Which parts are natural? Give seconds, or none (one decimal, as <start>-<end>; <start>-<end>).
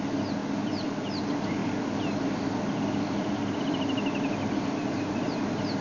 0.0-5.8